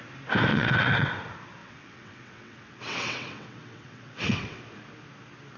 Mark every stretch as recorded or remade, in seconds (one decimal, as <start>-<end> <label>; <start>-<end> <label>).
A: 0.0-0.5 recorded; 0.5-1.1 remade; 1.1-1.6 recorded; 1.6-4.6 remade; 4.6-5.6 recorded